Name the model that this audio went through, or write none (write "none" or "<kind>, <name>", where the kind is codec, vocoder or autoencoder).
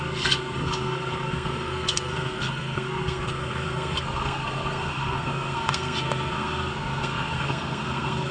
codec, SNAC